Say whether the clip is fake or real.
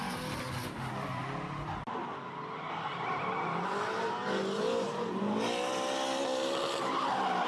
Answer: real